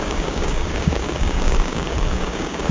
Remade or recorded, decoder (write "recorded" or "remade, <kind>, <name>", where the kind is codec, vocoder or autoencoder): remade, codec, DAC